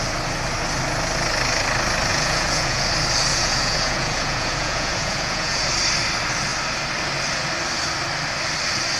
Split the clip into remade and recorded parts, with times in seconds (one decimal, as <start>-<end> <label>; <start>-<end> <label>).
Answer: 0.0-2.1 recorded; 2.1-2.9 remade; 2.9-3.3 recorded; 3.3-5.6 remade; 5.6-9.0 recorded